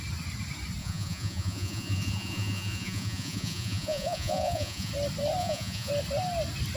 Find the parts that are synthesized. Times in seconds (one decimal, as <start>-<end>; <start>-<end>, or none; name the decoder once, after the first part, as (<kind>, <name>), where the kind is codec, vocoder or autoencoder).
0.8-4.9 (vocoder, Vocos); 5.4-5.9